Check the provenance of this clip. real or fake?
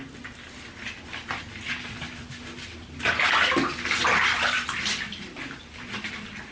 real